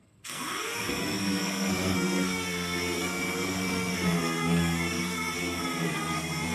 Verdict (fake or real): fake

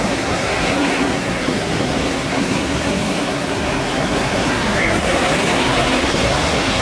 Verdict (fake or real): fake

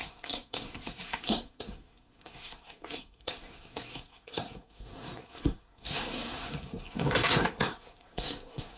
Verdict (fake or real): fake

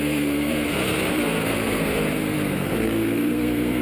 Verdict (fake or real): fake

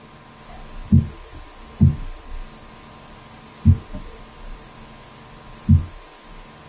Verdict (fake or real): real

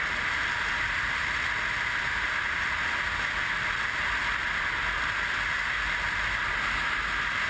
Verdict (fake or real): real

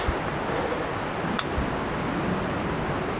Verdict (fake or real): real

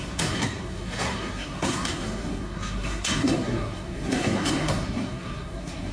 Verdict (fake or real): fake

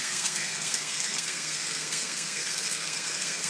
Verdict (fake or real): fake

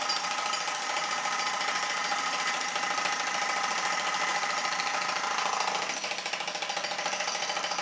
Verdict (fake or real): real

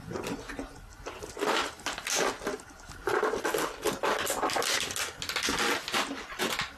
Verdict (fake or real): real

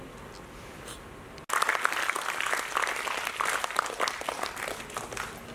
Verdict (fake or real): real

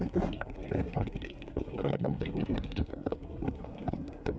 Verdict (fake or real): fake